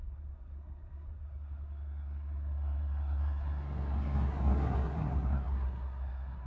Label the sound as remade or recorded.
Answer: remade